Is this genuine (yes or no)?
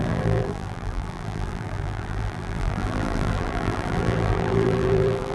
no